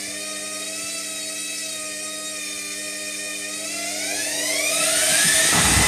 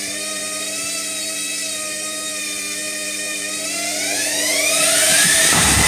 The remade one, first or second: second